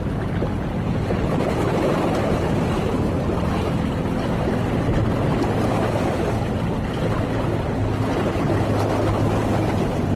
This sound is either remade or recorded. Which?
recorded